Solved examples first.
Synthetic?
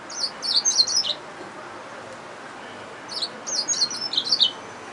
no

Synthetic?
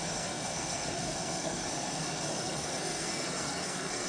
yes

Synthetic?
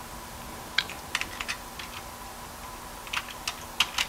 no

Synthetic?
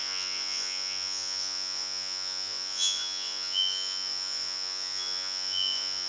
yes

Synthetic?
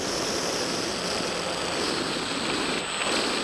no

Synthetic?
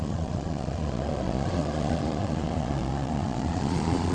yes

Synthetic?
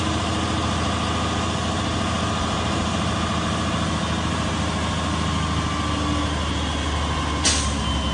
no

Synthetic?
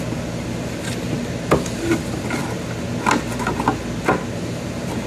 no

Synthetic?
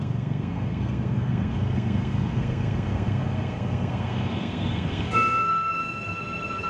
yes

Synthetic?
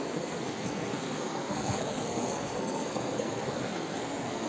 yes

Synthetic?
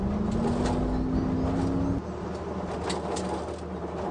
no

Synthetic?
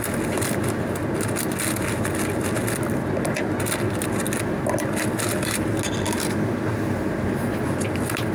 no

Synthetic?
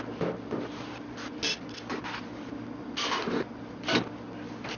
no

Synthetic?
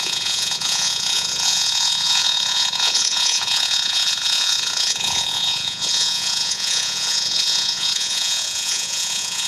yes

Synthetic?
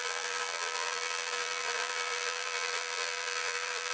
yes